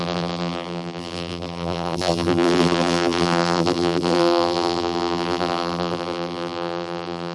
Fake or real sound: fake